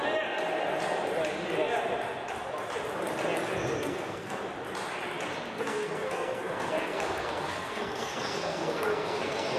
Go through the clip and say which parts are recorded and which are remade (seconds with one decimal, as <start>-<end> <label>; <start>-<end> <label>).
0.0-3.8 recorded; 3.8-4.4 remade; 4.4-5.5 recorded; 5.5-9.6 remade